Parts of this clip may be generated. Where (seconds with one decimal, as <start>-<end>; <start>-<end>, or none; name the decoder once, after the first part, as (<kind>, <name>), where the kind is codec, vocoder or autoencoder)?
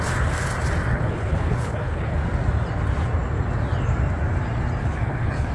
0.9-2.2 (codec, HILCodec); 4.8-5.5